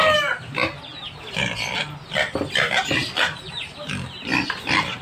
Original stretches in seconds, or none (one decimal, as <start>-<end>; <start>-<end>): 0.0-5.0